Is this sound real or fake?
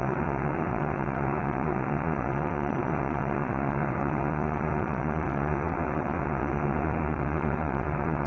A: fake